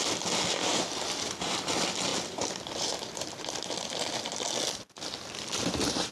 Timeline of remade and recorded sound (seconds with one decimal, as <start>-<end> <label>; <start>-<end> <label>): 0.0-0.7 recorded; 0.7-1.7 remade; 1.7-2.1 recorded; 2.1-6.1 remade